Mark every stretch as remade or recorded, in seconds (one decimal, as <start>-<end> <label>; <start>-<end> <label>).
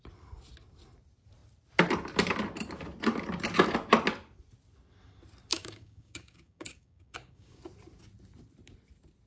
0.0-5.5 recorded; 5.5-7.6 remade; 7.6-9.3 recorded